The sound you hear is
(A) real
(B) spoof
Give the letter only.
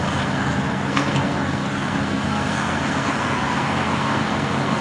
B